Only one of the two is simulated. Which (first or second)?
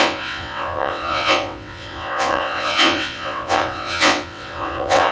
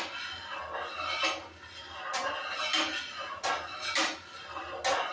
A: first